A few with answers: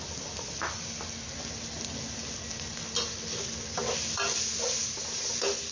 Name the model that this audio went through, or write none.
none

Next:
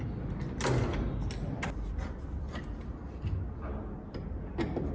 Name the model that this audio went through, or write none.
none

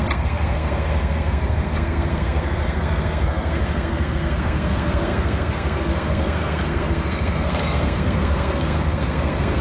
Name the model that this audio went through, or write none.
codec, SNAC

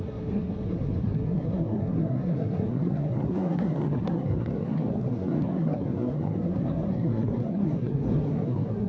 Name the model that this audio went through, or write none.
codec, SNAC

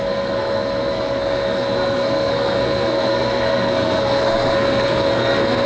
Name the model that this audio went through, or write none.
codec, SNAC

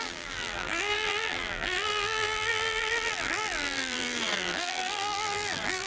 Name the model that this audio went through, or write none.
vocoder, BigVGAN v2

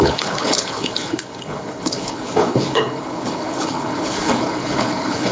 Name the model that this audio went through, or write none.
codec, HILCodec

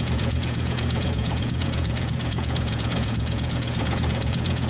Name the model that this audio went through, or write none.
vocoder, Vocos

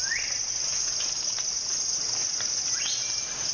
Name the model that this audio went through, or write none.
none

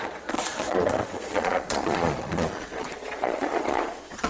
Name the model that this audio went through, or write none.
vocoder, Vocos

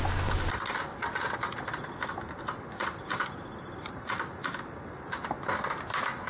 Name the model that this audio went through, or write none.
none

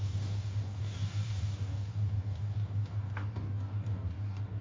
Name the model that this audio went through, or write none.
codec, DAC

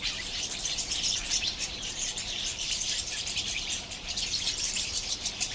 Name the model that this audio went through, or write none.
vocoder, BigVGAN v2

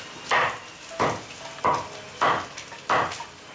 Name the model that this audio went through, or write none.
none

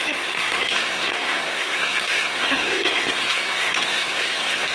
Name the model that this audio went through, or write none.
codec, SNAC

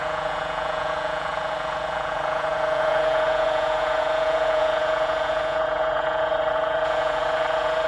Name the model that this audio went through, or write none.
vocoder, Vocos